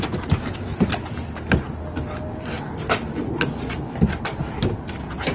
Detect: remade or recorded recorded